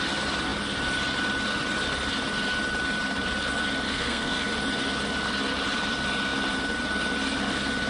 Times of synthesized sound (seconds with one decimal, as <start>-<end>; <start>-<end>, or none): 3.9-4.4